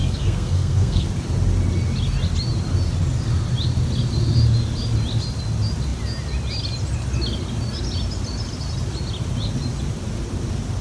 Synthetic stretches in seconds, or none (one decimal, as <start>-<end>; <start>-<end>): 0.0-1.1

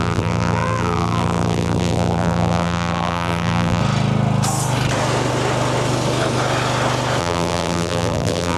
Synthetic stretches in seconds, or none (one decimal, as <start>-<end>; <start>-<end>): 0.0-3.8; 7.2-8.6